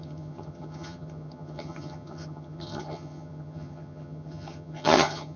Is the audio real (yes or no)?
no